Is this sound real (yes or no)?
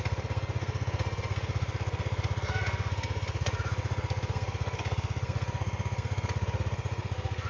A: no